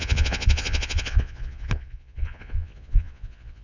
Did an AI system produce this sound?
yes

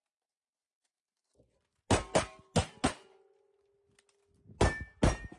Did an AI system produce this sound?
no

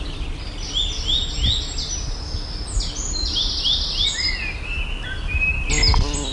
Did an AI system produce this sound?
no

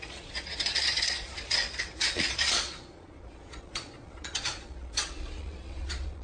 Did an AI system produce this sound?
yes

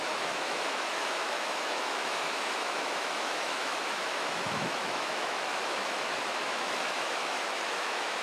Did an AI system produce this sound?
yes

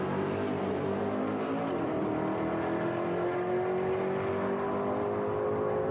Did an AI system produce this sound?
no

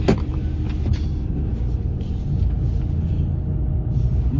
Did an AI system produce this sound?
no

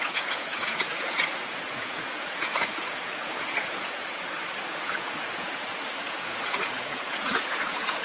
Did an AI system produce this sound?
yes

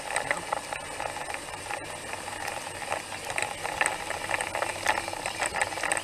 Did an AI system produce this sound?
no